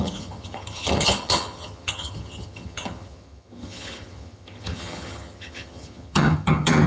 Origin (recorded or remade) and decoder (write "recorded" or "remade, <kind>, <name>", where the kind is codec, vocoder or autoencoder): remade, vocoder, HiFi-GAN